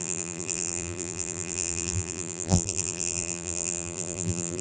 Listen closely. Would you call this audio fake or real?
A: fake